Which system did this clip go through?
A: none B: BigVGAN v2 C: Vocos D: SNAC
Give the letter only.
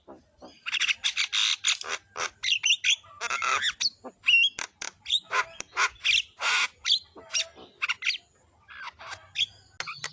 A